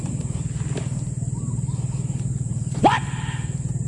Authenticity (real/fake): real